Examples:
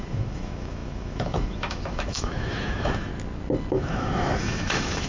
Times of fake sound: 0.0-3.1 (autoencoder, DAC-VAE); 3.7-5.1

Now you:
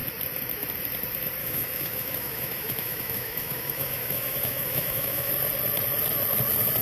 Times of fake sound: 1.4-5.3 (autoencoder, DAC-VAE)

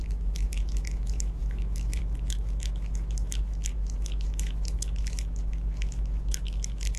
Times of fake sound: 0.0-7.0 (autoencoder, DAC-VAE)